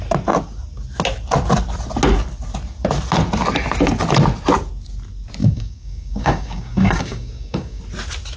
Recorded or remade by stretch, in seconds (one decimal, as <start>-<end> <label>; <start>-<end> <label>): 0.0-5.4 recorded; 5.4-7.8 remade; 7.8-8.4 recorded